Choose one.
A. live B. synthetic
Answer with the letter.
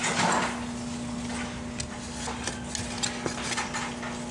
A